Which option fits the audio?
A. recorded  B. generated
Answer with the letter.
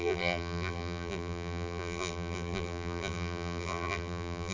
B